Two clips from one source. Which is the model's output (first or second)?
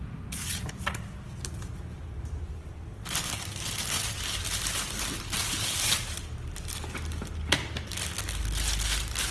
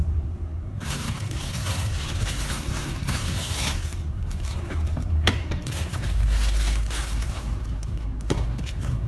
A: second